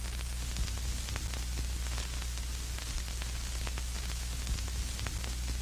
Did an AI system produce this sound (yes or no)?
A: no